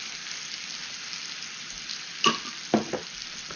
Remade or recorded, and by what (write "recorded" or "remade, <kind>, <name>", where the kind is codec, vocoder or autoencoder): recorded